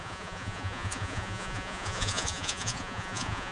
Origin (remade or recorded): remade